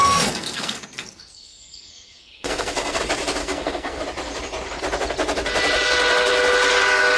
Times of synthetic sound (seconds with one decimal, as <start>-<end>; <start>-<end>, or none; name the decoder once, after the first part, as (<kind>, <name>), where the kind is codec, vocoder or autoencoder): 0.0-3.0 (codec, SNAC); 3.4-4.0